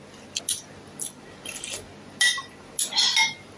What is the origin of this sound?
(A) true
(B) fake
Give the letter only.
A